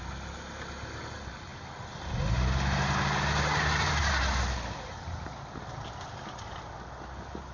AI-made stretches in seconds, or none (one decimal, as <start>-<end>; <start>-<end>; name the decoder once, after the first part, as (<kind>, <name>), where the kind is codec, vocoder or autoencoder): none